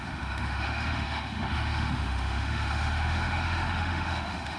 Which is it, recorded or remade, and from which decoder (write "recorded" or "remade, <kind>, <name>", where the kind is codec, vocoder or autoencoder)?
remade, autoencoder, DAC-VAE